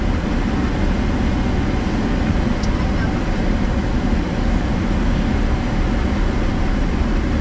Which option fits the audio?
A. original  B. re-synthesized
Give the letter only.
A